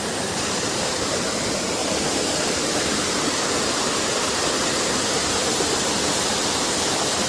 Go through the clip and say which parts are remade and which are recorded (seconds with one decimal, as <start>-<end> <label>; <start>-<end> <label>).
0.0-1.8 remade; 1.8-3.9 recorded; 3.9-5.2 remade; 5.2-6.8 recorded; 6.8-7.3 remade

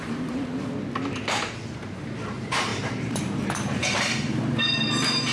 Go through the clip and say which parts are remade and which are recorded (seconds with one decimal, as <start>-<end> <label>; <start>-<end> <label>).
0.0-0.5 remade; 0.5-1.5 recorded; 1.5-5.3 remade

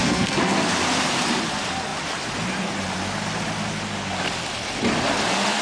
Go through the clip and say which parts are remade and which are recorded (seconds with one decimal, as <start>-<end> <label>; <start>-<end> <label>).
0.0-0.7 remade; 0.7-5.6 recorded

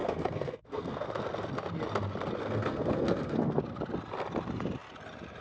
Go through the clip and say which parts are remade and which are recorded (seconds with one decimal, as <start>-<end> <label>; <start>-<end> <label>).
0.0-1.1 remade; 1.1-2.4 recorded; 2.4-3.6 remade; 3.6-5.4 recorded

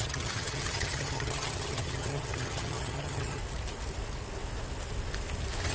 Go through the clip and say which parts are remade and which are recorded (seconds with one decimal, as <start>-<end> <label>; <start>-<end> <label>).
0.0-3.4 remade; 3.4-5.7 recorded